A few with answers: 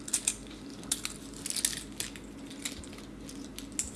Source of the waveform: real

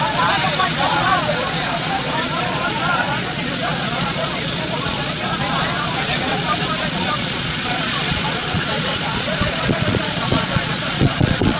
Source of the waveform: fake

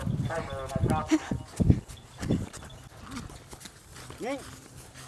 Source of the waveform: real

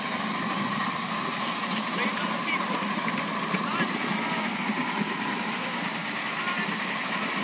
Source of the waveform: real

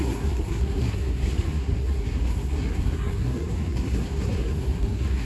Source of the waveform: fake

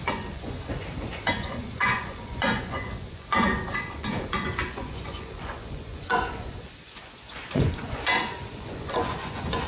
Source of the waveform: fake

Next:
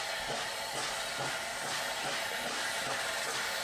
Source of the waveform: real